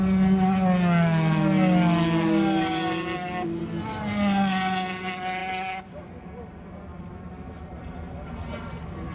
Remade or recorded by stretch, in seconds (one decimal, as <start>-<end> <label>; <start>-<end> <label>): 0.0-9.1 recorded